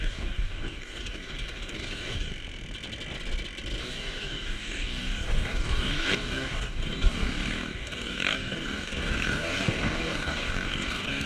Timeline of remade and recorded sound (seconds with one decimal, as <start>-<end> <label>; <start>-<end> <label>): 0.0-2.3 remade; 2.3-3.8 recorded; 3.8-11.3 remade